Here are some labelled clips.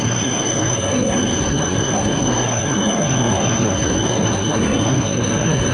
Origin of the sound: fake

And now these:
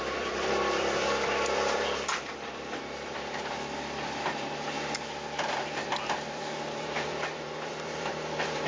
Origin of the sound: fake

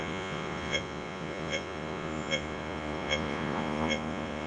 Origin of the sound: fake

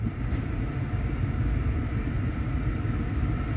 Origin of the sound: real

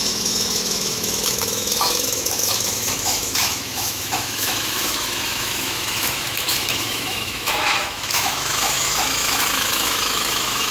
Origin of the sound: fake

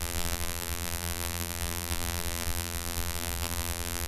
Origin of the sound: fake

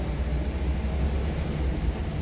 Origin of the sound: real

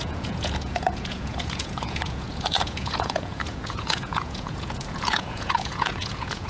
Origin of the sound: fake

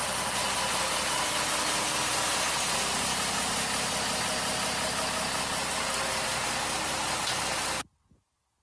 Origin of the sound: real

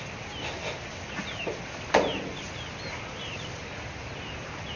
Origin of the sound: real